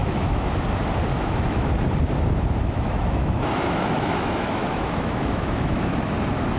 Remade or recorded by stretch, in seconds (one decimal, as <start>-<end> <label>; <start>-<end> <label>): 0.0-0.5 remade; 0.5-1.1 recorded; 1.1-1.7 remade; 1.7-2.6 recorded; 2.6-6.1 remade; 6.1-6.6 recorded